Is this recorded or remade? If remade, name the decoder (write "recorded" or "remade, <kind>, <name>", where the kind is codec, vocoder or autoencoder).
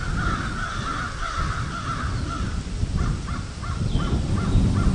recorded